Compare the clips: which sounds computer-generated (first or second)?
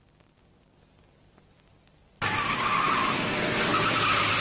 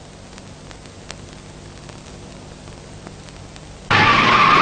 first